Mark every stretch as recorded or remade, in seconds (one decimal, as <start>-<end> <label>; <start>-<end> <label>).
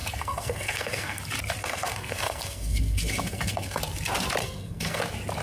0.0-1.2 remade; 1.2-1.6 recorded; 1.6-3.8 remade; 3.8-4.4 recorded; 4.4-5.0 remade; 5.0-5.4 recorded